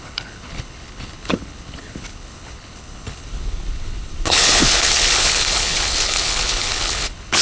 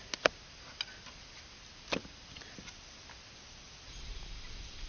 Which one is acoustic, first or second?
second